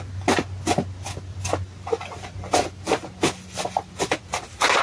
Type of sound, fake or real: real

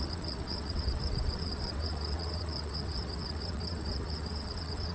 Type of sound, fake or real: fake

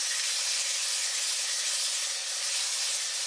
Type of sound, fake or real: real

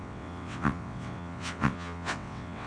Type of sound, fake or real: fake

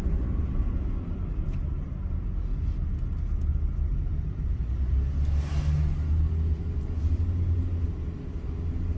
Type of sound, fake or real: real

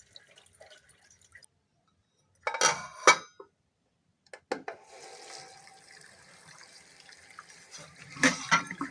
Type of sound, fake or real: real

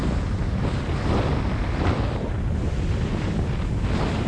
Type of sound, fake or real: real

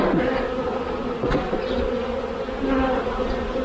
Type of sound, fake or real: real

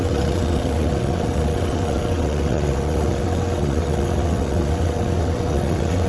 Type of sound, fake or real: fake